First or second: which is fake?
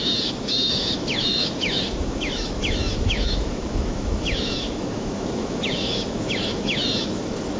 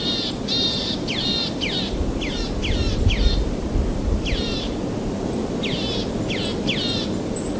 first